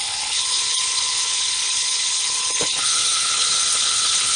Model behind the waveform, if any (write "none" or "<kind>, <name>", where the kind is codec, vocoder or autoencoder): codec, HILCodec